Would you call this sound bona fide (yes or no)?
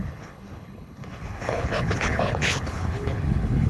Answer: no